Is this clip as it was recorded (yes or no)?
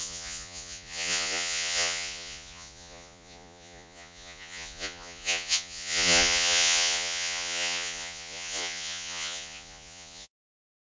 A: no